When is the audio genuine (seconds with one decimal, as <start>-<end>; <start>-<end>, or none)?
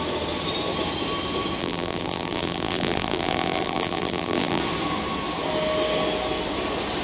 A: 0.0-1.6; 4.6-7.0